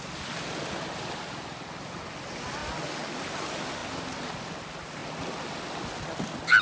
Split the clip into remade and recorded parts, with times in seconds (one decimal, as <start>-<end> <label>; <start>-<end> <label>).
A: 0.0-5.0 recorded; 5.0-5.9 remade; 5.9-6.6 recorded